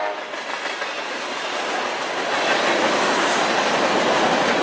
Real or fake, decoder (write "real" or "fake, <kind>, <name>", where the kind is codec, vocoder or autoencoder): real